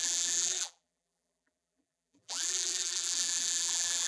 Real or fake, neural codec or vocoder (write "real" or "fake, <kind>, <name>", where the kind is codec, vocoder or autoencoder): fake, vocoder, BigVGAN v2